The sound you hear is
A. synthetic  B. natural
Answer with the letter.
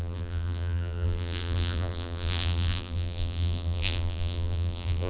A